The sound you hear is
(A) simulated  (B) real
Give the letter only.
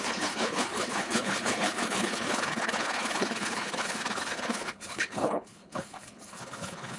A